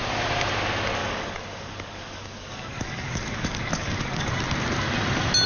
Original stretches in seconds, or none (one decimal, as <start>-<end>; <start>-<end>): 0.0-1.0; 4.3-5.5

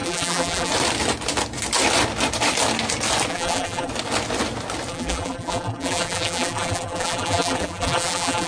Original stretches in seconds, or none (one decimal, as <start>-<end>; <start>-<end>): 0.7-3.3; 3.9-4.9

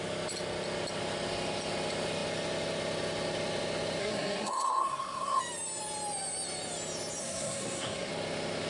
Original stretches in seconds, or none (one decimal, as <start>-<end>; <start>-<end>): 0.0-4.0; 5.4-7.2; 8.1-8.7